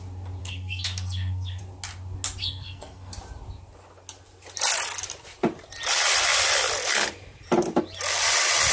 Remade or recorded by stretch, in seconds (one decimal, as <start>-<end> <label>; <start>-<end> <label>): 0.0-0.4 recorded; 0.4-1.6 remade; 1.6-2.4 recorded; 2.4-3.1 remade; 3.1-8.7 recorded